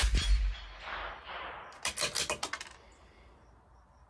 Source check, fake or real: real